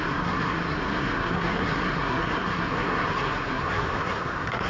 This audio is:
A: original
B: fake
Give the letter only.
B